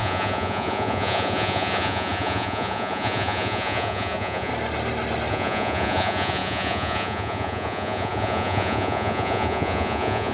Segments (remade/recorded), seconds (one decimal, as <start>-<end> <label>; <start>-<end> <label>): 0.0-4.5 remade; 4.5-5.3 recorded; 5.3-10.3 remade

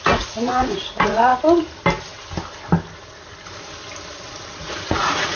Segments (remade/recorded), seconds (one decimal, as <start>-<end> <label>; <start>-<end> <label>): 0.0-1.3 remade; 1.3-4.5 recorded; 4.5-5.4 remade

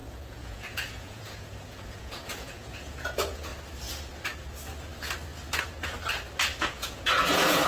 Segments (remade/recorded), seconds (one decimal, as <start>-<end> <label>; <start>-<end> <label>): 0.0-3.5 remade; 3.5-6.6 recorded; 6.6-7.7 remade

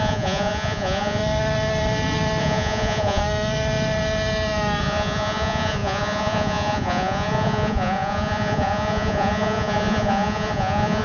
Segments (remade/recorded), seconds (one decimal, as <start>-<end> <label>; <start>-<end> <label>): 0.0-1.2 remade; 1.2-2.4 recorded; 2.4-3.2 remade; 3.2-4.8 recorded; 4.8-11.0 remade

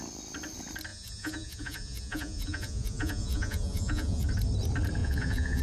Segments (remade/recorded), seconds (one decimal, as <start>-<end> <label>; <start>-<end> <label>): 0.0-0.9 recorded; 0.9-4.3 remade; 4.3-5.0 recorded; 5.0-5.6 remade

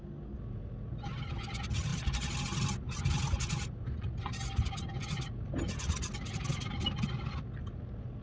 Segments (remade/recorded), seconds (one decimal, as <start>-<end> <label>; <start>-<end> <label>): 0.0-8.2 recorded

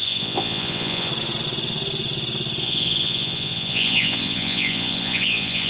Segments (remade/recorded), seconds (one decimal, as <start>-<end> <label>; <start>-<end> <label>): 0.0-1.1 remade; 1.1-2.6 recorded; 2.6-5.7 remade